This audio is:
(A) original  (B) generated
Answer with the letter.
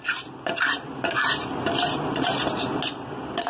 A